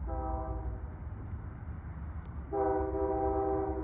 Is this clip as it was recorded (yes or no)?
yes